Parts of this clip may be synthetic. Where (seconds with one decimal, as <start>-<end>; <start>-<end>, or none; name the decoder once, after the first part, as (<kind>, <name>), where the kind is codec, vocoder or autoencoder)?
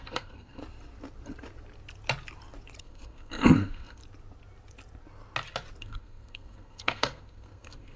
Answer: 0.0-0.6 (codec, SNAC); 2.8-4.0; 5.8-8.0